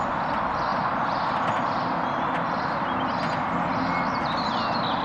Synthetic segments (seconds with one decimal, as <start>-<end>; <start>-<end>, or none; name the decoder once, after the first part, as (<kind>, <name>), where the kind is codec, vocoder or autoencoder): none

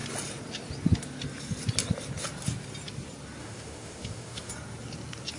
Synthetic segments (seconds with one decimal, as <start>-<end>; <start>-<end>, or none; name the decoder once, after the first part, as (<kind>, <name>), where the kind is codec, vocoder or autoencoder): 3.4-4.5 (autoencoder, DAC-VAE)

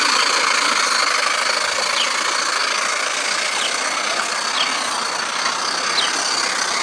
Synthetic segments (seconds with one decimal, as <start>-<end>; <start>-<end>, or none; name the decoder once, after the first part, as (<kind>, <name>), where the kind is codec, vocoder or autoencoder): none

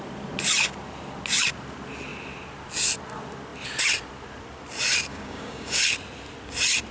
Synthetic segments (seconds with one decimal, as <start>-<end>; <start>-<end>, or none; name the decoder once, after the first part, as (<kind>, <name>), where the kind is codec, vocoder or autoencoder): 5.1-5.8 (codec, DAC)

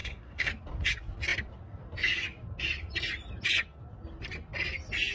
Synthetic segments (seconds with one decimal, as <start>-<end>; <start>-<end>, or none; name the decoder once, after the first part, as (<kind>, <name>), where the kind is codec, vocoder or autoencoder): 0.0-0.5 (codec, SNAC)